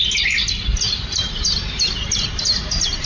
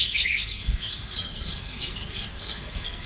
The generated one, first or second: second